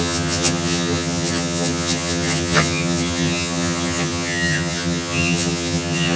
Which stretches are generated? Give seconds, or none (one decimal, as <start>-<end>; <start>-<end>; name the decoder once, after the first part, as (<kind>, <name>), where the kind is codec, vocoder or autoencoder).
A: 0.0-6.2 (vocoder, HiFi-GAN)